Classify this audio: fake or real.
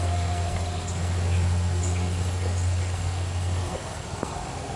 fake